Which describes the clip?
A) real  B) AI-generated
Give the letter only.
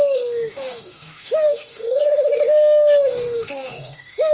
B